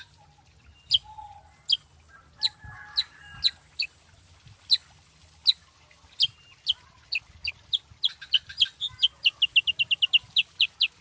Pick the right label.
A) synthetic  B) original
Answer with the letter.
B